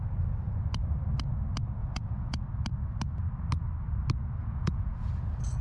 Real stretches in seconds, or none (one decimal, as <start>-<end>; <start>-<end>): 0.0-1.8; 2.4-4.4; 5.1-5.6